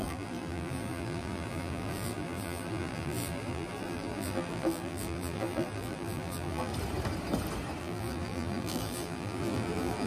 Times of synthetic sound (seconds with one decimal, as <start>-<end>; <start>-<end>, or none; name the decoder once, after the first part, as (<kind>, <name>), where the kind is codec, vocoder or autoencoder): 0.0-6.7 (vocoder, BigVGAN v2); 7.8-10.1

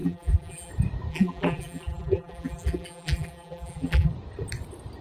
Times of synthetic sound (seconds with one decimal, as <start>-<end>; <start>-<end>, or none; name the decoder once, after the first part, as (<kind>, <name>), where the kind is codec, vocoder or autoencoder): 0.0-0.7 (vocoder, BigVGAN v2); 1.1-4.1

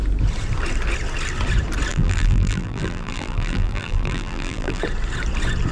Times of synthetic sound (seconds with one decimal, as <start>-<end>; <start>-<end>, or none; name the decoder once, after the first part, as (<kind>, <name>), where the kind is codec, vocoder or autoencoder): 1.9-4.8 (vocoder, BigVGAN v2)

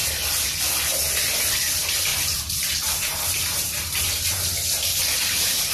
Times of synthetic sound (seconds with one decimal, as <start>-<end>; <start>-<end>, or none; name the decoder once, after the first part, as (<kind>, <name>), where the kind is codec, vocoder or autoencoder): 2.1-5.7 (vocoder, BigVGAN v2)

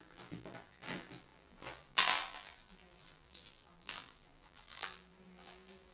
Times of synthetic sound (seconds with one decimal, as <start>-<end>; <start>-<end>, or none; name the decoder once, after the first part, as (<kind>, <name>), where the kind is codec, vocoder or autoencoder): 0.0-5.9 (vocoder, BigVGAN v2)

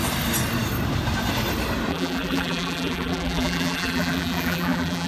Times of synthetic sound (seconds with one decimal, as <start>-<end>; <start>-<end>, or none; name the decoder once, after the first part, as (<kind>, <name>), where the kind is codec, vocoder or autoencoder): 1.9-5.1 (vocoder, BigVGAN v2)

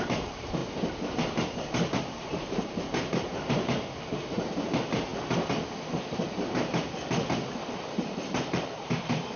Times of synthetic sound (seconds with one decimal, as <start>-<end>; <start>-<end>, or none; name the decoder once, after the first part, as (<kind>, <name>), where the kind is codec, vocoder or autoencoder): 0.0-0.6 (vocoder, BigVGAN v2); 2.0-5.1; 7.5-9.4